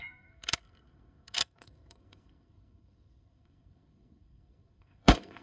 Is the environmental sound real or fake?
fake